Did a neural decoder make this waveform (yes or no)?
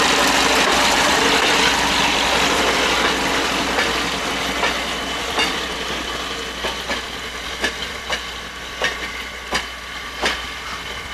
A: yes